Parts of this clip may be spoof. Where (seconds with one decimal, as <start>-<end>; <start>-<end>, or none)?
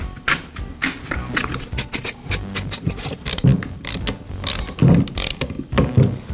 none